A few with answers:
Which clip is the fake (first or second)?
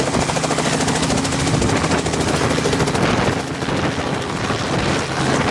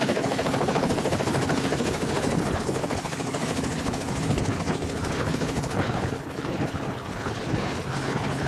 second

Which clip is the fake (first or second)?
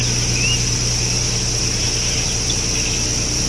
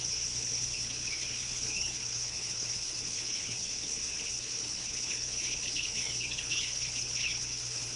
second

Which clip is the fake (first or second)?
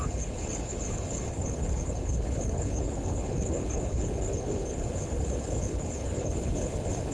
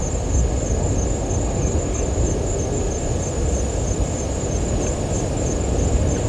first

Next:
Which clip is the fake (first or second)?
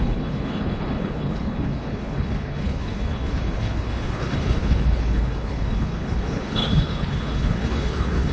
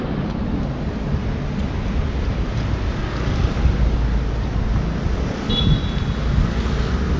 first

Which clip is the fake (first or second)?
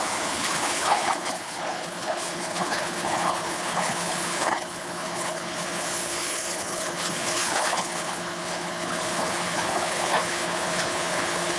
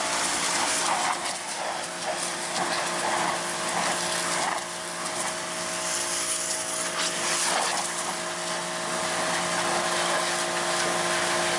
first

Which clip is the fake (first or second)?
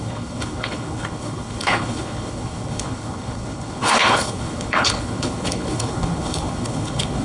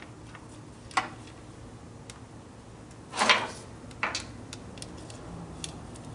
first